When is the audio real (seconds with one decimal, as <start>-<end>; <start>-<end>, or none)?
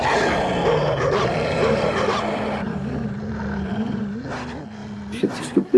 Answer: 0.0-0.6; 4.1-5.8